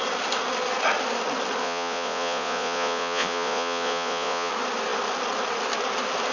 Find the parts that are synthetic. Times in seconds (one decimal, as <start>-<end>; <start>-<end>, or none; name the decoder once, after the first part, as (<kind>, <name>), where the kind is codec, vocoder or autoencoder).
1.6-4.5 (vocoder, Vocos)